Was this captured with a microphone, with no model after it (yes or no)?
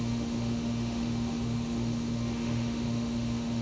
no